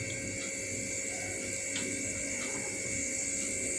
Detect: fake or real real